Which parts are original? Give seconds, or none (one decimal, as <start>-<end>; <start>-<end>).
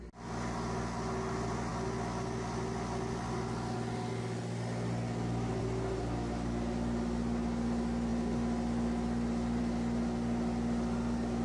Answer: 0.0-11.4